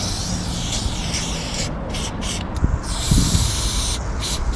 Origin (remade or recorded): recorded